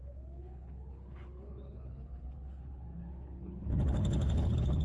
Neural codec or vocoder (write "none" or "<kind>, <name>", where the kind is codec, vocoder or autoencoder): codec, HILCodec